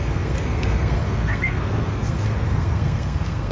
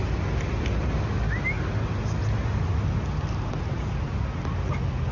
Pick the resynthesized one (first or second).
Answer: first